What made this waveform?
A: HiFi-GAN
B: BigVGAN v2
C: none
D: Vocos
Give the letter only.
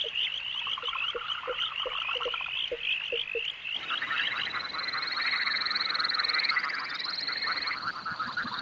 C